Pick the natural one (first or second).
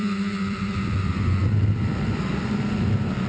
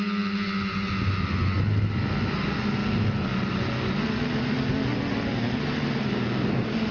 second